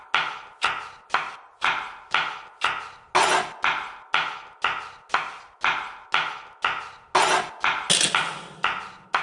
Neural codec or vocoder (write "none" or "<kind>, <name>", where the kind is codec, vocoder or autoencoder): none